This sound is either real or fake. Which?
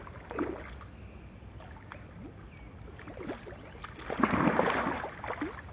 real